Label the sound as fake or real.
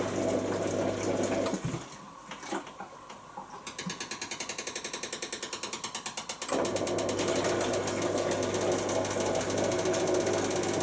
real